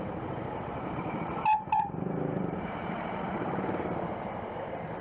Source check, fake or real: fake